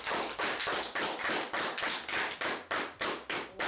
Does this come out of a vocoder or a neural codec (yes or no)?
no